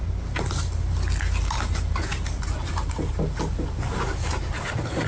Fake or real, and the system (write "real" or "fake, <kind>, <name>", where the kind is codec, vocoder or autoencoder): real